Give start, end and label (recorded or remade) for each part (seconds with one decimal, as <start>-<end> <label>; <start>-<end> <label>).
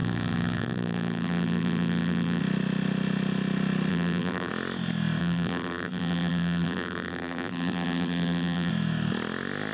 0.0-2.4 remade; 2.4-3.9 recorded; 3.9-4.5 remade; 4.5-5.2 recorded; 5.2-8.7 remade; 8.7-9.7 recorded